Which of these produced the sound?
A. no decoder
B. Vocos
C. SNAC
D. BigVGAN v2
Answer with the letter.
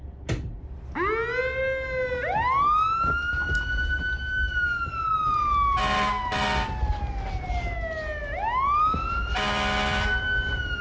A